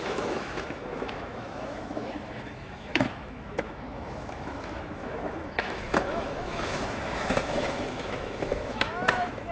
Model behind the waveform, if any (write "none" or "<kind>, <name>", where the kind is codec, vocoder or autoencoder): autoencoder, DAC-VAE